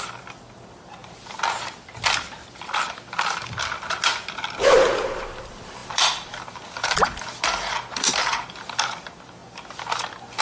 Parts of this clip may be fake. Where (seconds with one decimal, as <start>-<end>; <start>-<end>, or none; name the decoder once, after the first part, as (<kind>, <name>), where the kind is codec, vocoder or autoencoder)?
0.0-1.0 (vocoder, BigVGAN v2); 5.3-10.4